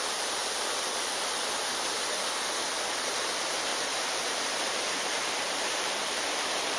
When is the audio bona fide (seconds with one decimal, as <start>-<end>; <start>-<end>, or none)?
0.0-3.7